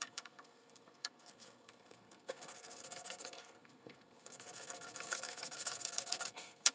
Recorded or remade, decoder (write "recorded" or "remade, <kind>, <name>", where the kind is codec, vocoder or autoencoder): remade, codec, SNAC